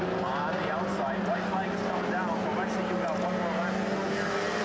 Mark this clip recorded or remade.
recorded